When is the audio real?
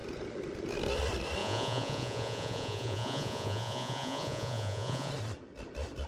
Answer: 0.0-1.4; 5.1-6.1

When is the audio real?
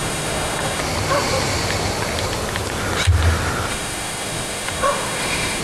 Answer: 0.8-3.7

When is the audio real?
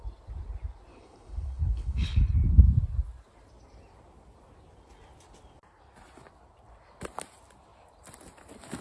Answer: 0.0-0.9; 2.2-8.8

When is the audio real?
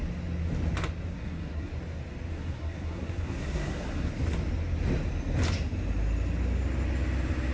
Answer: 0.0-1.1; 1.7-2.3; 4.1-7.5